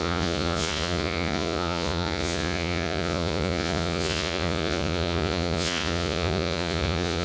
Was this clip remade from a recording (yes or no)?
yes